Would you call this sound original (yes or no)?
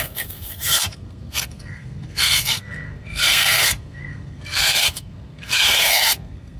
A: no